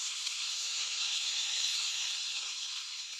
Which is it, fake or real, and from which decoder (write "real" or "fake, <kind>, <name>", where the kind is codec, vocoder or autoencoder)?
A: fake, codec, SNAC